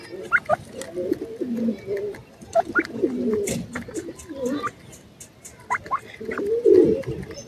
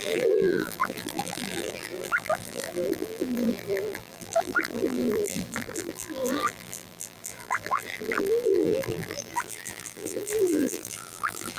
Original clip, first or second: first